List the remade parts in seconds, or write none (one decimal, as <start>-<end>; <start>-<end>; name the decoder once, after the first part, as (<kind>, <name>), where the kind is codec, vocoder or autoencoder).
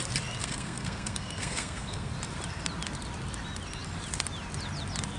0.4-2.1 (codec, SNAC)